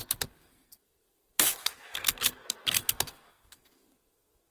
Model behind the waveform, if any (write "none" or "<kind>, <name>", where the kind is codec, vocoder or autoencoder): codec, SNAC